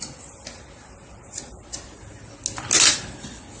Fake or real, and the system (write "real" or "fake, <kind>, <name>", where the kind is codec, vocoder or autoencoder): real